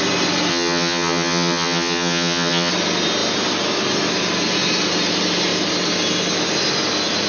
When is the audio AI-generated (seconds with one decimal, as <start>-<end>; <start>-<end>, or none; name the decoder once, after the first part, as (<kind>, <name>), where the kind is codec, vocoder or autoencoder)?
0.5-2.7 (vocoder, HiFi-GAN)